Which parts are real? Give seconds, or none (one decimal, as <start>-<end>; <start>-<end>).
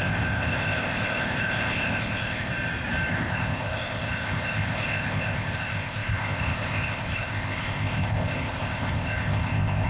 2.5-3.1